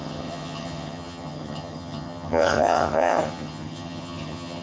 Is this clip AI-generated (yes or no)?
yes